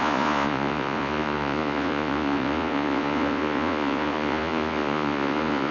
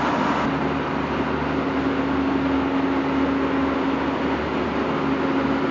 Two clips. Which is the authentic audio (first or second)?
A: second